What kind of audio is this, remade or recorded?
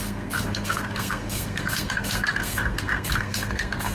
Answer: remade